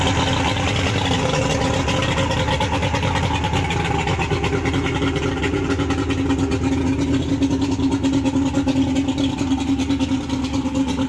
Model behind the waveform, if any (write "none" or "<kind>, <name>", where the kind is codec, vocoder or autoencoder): none